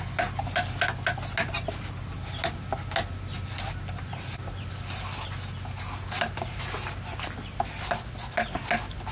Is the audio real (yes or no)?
yes